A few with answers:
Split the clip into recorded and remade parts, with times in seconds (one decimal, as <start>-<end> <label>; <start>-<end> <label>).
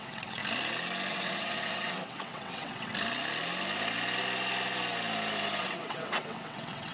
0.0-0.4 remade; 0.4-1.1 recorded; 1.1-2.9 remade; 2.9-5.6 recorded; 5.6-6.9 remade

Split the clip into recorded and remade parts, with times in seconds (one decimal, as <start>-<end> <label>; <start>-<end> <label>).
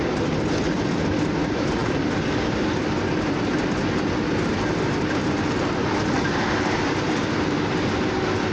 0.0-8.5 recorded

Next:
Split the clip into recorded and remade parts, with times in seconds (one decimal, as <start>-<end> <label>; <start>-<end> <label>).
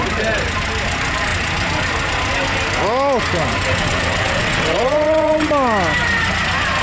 0.0-3.7 recorded; 3.7-5.5 remade; 5.5-6.8 recorded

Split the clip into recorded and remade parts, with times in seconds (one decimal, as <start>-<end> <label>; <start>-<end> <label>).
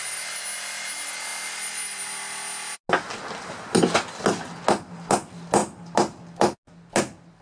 0.0-7.4 recorded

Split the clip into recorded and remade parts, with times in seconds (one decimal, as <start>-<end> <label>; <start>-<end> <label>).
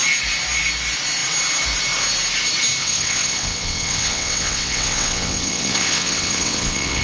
0.0-2.8 recorded; 2.8-7.0 remade